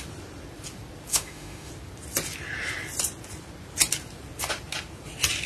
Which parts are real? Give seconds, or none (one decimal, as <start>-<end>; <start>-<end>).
0.0-1.1; 1.7-5.5